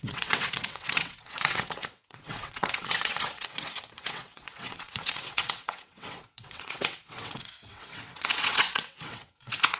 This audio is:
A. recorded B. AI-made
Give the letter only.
B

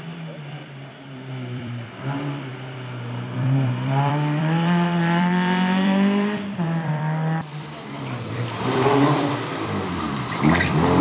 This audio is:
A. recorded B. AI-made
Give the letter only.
B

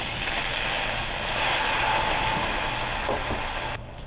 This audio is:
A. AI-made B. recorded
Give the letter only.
B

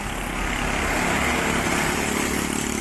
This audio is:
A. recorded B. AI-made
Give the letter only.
A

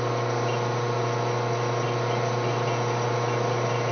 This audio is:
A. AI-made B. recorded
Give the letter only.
B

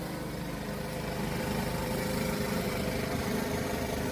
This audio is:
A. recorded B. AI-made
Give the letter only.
A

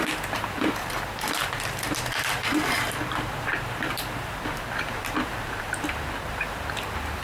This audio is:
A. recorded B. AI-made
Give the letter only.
B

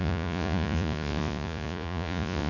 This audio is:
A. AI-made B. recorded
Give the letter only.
A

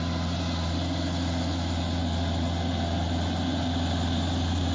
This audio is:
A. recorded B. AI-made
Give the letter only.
A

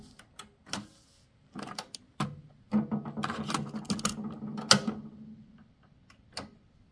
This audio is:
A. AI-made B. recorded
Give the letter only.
B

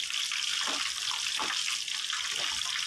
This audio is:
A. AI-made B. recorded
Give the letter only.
B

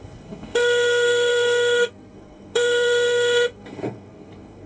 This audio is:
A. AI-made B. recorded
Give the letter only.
A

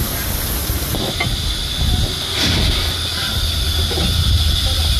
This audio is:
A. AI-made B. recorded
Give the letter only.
B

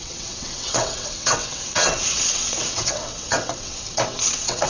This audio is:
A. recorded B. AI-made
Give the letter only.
B